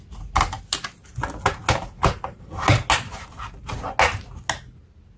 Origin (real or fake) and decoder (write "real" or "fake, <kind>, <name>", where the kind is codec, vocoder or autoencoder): real